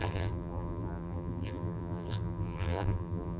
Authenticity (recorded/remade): remade